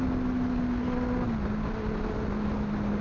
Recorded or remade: recorded